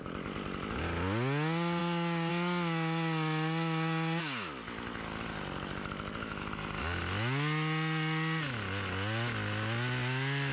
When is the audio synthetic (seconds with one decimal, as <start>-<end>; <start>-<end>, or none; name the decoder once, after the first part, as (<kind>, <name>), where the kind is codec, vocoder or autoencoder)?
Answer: none